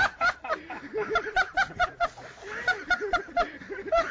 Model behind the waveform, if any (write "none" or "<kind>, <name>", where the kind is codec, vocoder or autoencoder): none